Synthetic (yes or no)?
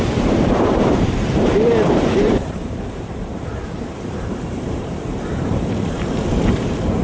yes